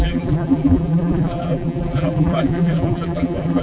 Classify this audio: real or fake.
fake